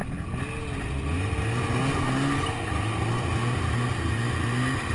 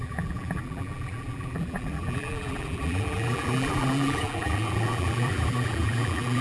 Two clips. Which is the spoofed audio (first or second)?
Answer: second